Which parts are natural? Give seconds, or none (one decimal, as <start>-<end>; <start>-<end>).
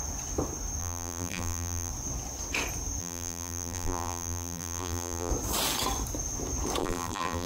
0.0-0.8; 1.9-3.0; 5.3-6.8